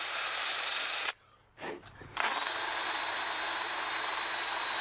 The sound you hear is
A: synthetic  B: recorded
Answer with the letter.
A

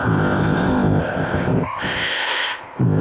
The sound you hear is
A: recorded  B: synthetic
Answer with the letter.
B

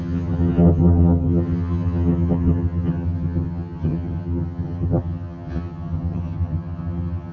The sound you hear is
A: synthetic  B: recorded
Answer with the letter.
A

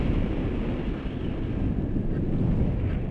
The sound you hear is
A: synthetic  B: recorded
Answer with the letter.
B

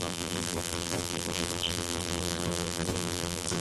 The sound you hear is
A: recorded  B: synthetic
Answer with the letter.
B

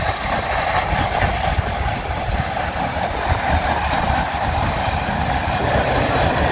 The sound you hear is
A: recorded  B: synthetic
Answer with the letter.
A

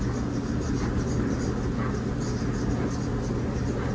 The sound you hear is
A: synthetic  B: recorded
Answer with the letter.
B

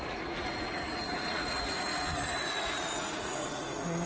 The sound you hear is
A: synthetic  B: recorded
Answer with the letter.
A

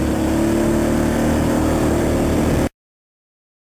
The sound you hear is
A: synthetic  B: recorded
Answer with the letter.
B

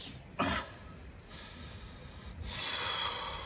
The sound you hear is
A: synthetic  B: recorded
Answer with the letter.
B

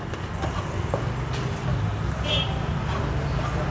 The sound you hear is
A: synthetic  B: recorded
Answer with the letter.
B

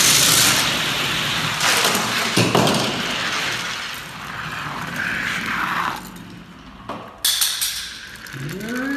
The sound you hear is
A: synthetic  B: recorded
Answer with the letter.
B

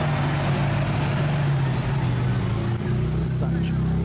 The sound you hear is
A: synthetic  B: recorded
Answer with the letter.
B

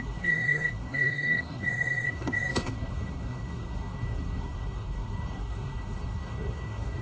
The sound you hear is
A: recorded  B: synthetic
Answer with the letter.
B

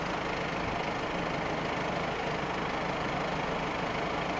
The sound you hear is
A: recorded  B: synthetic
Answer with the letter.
A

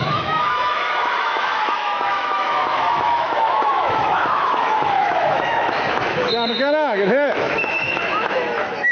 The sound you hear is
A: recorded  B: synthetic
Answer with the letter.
B